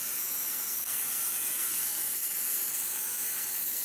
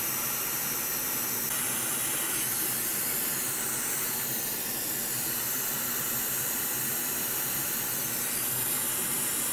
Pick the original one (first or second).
second